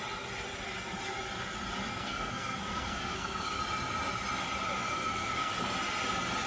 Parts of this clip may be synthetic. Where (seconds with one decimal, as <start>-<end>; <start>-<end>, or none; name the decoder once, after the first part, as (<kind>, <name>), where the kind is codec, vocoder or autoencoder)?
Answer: 1.9-3.6 (codec, SNAC); 4.9-5.5